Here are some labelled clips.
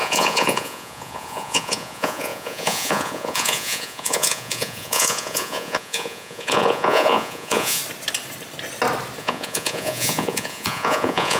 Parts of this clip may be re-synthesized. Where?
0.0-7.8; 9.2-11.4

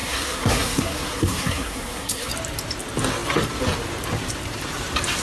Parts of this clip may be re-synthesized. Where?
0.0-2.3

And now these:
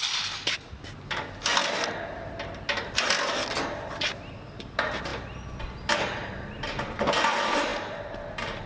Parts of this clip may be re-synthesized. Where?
none

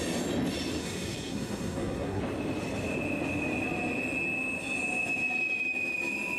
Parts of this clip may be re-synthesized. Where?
0.8-2.2

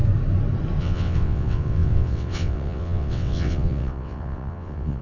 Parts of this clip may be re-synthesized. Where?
0.8-5.0